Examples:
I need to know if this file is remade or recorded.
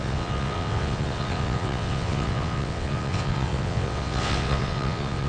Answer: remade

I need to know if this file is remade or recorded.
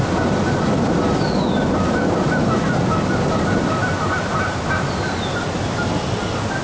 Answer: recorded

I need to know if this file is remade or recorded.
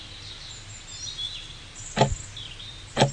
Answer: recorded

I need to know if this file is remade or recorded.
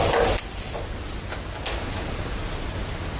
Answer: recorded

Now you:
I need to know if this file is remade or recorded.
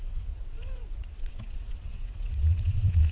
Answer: remade